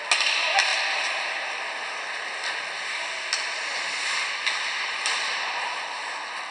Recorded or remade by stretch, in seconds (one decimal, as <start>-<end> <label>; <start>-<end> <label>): 0.0-6.5 recorded